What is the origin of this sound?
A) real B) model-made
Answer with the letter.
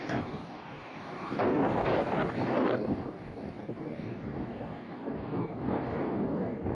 B